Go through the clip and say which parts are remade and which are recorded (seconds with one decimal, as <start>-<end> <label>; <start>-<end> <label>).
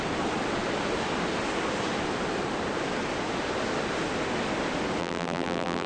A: 0.0-5.0 recorded; 5.0-5.9 remade